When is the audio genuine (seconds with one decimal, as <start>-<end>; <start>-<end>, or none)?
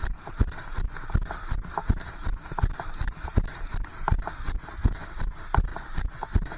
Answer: 0.0-6.6